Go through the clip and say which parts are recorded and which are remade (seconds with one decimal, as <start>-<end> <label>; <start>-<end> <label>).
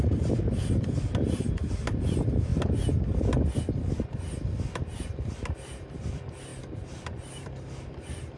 0.0-6.5 recorded; 6.5-8.4 remade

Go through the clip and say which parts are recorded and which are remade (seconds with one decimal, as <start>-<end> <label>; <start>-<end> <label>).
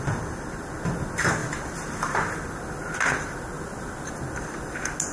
0.0-1.4 recorded; 1.4-4.1 remade; 4.1-5.1 recorded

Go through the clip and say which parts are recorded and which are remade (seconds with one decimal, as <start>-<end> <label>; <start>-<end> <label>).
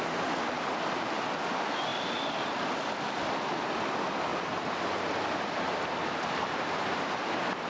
0.0-6.0 recorded; 6.0-7.1 remade; 7.1-7.7 recorded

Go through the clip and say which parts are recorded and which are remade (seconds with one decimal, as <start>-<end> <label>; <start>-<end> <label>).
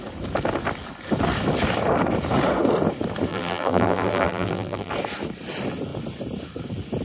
0.0-3.3 recorded; 3.3-4.9 remade; 4.9-7.0 recorded